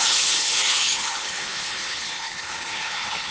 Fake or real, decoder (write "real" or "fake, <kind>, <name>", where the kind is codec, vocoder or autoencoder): fake, codec, HILCodec